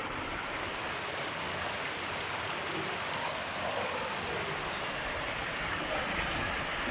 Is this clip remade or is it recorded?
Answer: recorded